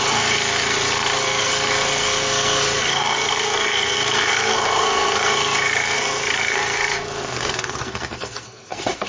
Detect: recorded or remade remade